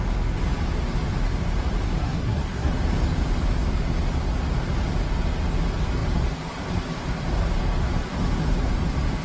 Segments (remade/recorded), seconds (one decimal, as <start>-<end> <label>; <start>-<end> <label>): 0.0-2.0 recorded; 2.0-2.7 remade; 2.7-9.2 recorded